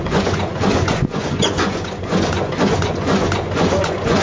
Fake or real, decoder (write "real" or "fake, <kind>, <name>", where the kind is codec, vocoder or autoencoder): fake, vocoder, Vocos